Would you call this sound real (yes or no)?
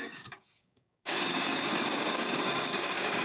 no